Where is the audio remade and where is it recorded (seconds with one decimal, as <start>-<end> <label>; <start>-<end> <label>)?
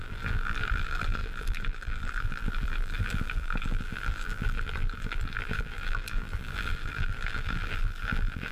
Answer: 0.0-8.5 remade